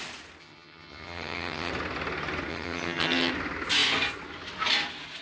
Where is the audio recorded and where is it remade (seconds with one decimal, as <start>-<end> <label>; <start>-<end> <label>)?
0.0-0.4 recorded; 0.4-1.7 remade; 1.7-2.5 recorded; 2.5-3.3 remade; 3.3-5.2 recorded

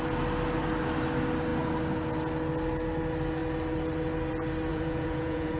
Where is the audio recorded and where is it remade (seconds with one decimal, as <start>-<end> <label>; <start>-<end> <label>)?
0.0-4.7 recorded; 4.7-5.6 remade

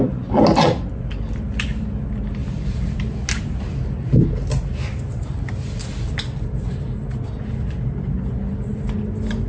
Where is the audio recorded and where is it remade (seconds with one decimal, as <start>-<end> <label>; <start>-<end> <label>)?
0.0-9.5 recorded

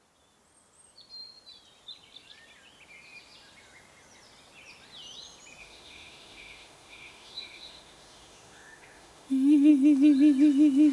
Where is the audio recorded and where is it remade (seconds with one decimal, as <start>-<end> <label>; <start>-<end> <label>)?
0.0-5.6 recorded; 5.6-9.7 remade; 9.7-10.9 recorded

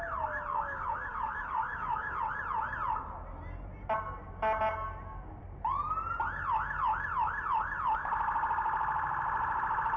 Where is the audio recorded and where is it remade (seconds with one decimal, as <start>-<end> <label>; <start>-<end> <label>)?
0.0-0.5 recorded; 0.5-2.2 remade; 2.2-10.0 recorded